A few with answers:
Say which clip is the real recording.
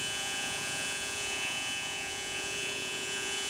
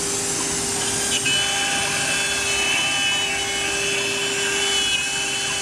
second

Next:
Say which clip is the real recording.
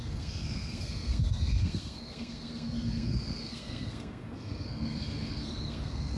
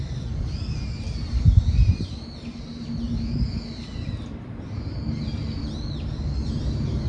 second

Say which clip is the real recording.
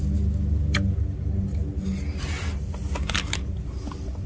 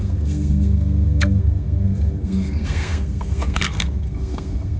first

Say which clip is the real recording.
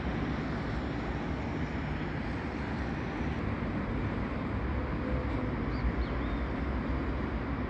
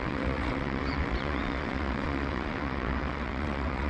first